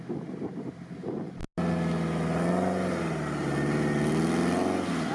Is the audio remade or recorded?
recorded